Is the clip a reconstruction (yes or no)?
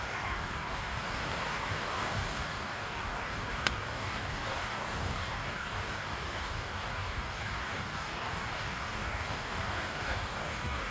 yes